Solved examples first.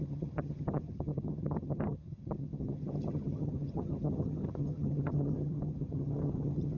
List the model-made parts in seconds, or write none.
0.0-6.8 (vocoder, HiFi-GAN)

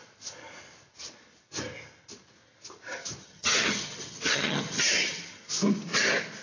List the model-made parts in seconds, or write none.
3.2-5.5 (vocoder, HiFi-GAN)

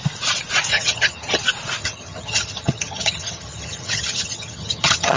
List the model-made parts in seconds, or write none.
0.7-1.4 (vocoder, HiFi-GAN); 1.8-5.2

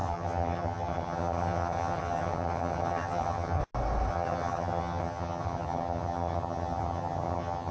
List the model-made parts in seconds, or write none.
0.0-3.6 (vocoder, HiFi-GAN); 4.1-7.7